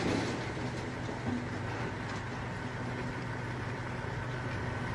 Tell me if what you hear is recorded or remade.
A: recorded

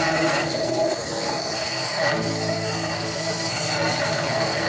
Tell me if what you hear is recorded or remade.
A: remade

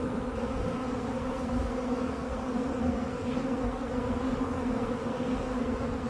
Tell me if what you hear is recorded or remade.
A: remade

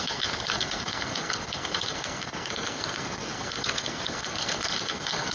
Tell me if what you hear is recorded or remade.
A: remade